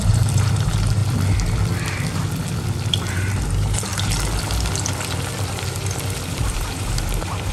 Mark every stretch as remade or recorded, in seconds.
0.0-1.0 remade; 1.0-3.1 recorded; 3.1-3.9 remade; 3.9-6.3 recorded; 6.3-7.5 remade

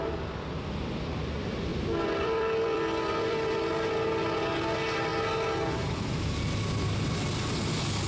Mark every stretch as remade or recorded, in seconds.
0.0-1.7 recorded; 1.7-3.7 remade; 3.7-8.1 recorded

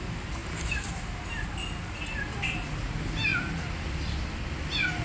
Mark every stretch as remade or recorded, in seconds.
0.0-5.0 recorded

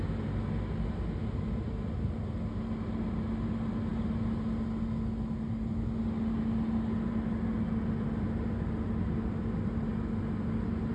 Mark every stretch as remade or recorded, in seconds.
0.0-10.9 recorded

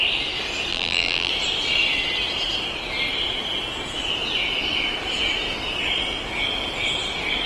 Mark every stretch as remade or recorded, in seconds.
0.0-0.7 recorded; 0.7-1.3 remade; 1.3-7.5 recorded

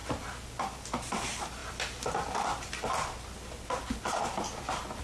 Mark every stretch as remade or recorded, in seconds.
0.0-0.8 remade; 0.8-5.0 recorded